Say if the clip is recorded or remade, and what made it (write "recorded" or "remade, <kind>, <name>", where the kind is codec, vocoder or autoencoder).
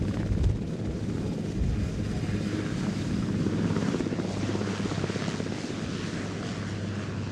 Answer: recorded